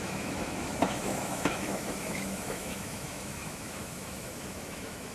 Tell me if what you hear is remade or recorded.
remade